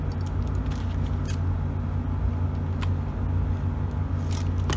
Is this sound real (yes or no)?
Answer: yes